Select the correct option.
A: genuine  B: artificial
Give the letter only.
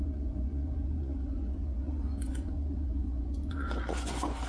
B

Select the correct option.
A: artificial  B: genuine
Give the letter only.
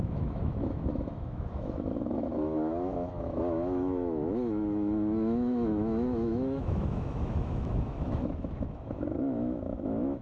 A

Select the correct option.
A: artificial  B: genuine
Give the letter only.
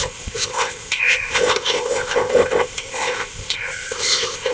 A